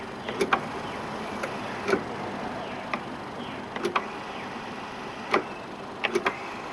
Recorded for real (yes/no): yes